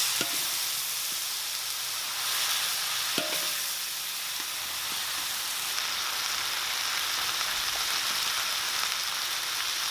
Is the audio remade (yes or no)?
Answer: no